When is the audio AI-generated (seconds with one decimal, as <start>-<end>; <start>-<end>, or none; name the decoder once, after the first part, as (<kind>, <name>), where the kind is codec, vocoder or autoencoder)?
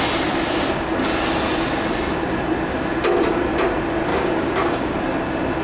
4.1-5.0 (codec, DAC)